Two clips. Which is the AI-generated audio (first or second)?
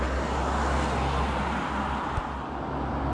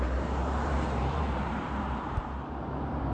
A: second